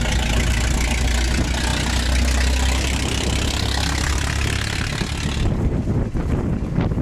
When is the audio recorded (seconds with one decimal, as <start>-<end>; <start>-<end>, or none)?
0.0-7.0